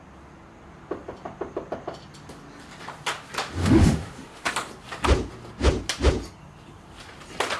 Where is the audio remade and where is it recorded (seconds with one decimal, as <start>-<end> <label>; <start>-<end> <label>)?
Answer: 0.0-3.6 recorded; 3.6-4.5 remade; 4.5-7.6 recorded